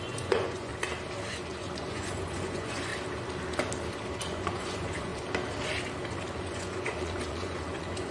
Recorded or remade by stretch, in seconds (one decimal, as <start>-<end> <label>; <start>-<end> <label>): 0.0-0.7 remade; 0.7-1.3 recorded; 1.3-2.9 remade; 2.9-4.2 recorded; 4.2-5.1 remade; 5.1-6.4 recorded; 6.4-8.1 remade